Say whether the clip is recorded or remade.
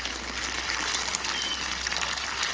recorded